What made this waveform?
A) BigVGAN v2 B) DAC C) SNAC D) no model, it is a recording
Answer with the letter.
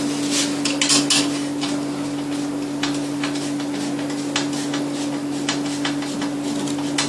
D